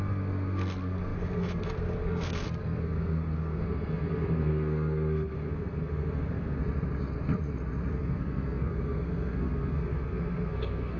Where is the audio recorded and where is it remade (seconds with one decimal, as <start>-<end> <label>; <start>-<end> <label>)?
0.0-6.6 remade; 6.6-7.9 recorded; 7.9-11.0 remade